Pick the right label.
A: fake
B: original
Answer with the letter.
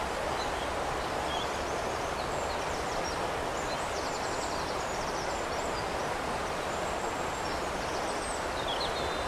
B